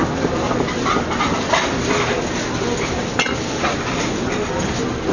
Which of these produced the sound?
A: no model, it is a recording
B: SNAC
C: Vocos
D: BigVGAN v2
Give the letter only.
A